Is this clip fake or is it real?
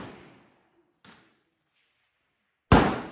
real